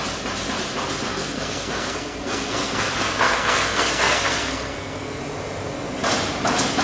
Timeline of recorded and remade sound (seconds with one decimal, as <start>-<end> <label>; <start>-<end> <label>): 0.0-1.1 recorded; 1.1-5.2 remade; 5.2-6.8 recorded